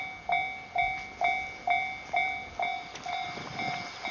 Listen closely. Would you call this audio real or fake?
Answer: real